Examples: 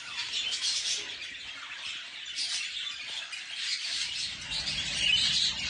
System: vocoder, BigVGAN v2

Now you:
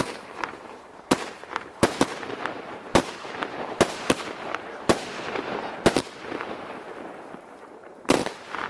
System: vocoder, BigVGAN v2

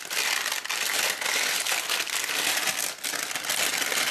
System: none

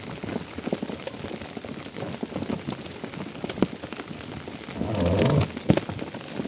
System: none